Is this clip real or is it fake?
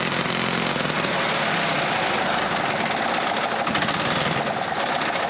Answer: fake